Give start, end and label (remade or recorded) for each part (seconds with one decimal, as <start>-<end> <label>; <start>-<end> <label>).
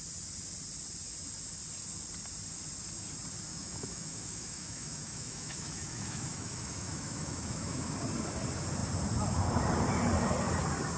0.0-3.5 recorded; 3.5-7.9 remade; 7.9-11.0 recorded